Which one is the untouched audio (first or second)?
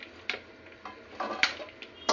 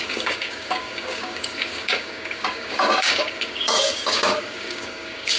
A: first